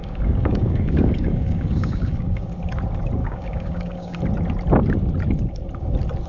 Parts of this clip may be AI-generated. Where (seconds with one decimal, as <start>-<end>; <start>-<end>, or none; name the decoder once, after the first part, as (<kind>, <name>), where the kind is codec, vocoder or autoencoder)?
0.0-2.5 (codec, DAC); 3.2-4.2